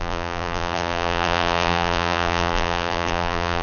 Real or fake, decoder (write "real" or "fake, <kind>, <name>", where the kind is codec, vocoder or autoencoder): fake, vocoder, BigVGAN v2